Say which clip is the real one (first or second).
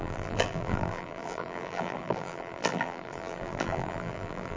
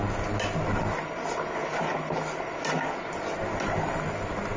second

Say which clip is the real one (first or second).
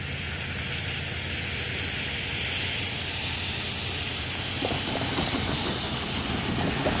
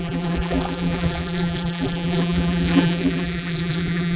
first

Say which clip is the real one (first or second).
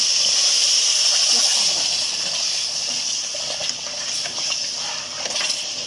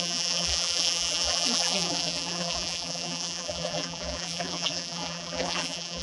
first